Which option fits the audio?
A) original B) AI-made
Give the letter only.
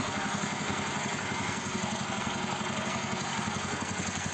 B